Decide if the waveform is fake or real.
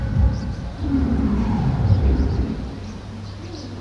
fake